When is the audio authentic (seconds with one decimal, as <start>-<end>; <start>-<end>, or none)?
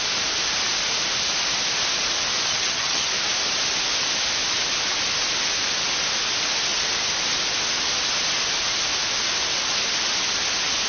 0.0-2.5; 3.1-10.9